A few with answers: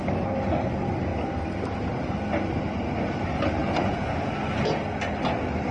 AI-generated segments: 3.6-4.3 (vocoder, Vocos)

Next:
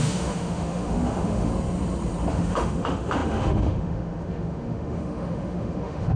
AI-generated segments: 0.0-1.5 (autoencoder, DAC-VAE); 2.3-6.2

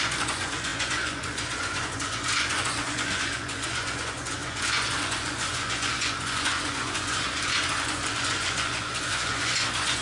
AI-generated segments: 0.0-10.0 (vocoder, Vocos)

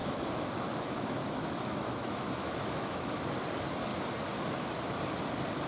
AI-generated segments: 0.0-3.4 (autoencoder, DAC-VAE)

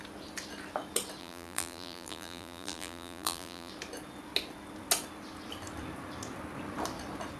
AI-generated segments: 1.2-3.7 (vocoder, BigVGAN v2)